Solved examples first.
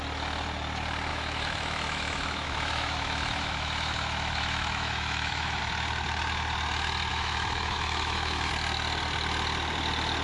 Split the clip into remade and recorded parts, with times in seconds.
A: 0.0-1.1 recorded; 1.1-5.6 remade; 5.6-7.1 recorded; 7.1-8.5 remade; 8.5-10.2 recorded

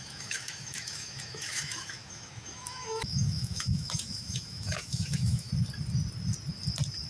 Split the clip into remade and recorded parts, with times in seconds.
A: 0.0-5.5 remade; 5.5-7.1 recorded

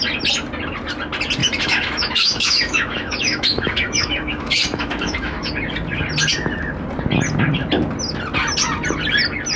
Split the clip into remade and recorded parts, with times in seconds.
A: 0.0-1.4 recorded; 1.4-5.5 remade; 5.5-9.6 recorded

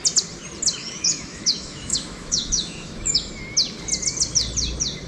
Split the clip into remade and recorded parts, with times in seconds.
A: 0.0-0.8 recorded; 0.8-3.3 remade; 3.3-5.1 recorded

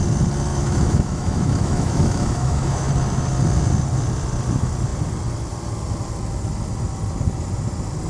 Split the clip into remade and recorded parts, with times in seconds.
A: 0.0-0.5 recorded; 0.5-2.9 remade; 2.9-8.1 recorded

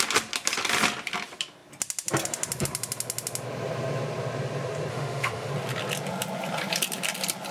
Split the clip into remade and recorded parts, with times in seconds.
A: 0.0-4.9 recorded; 4.9-5.5 remade; 5.5-7.5 recorded

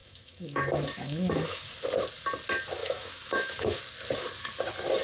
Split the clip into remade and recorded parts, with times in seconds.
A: 0.0-1.7 remade; 1.7-2.8 recorded; 2.8-3.8 remade; 3.8-5.0 recorded